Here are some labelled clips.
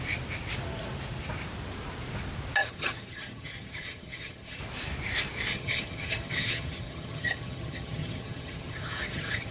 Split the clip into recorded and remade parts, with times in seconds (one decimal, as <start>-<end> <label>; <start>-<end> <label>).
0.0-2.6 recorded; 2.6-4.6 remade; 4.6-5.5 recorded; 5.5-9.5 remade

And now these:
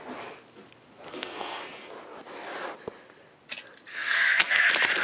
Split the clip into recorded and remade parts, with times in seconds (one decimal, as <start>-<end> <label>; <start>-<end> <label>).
0.0-1.1 recorded; 1.1-1.6 remade; 1.6-3.9 recorded; 3.9-4.6 remade; 4.6-5.0 recorded

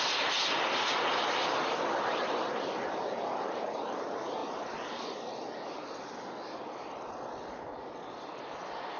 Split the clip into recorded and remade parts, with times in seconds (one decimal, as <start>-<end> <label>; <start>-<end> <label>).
0.0-4.4 recorded; 4.4-5.0 remade; 5.0-9.0 recorded